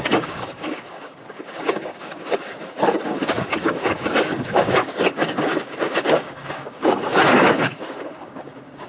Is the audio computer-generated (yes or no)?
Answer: yes